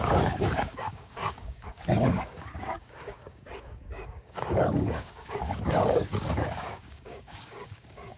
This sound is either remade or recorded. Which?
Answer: remade